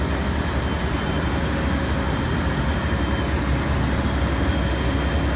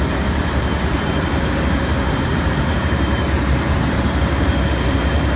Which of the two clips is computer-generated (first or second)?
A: second